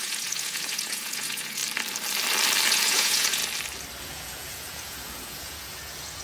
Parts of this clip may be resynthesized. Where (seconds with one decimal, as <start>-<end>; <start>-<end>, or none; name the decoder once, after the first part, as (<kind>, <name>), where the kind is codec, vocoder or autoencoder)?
0.0-1.6 (vocoder, Vocos); 2.7-3.4; 4.0-6.2